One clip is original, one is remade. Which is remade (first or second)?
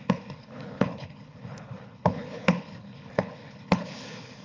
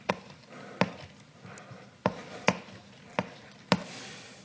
first